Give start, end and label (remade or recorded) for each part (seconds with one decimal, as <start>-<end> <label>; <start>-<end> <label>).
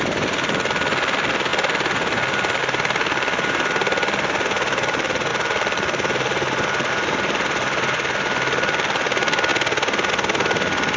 0.0-11.0 recorded